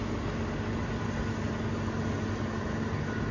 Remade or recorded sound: recorded